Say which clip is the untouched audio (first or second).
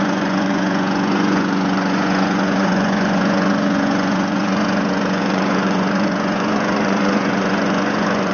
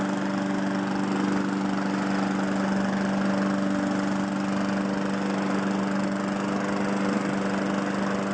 second